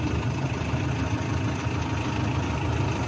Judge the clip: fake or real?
real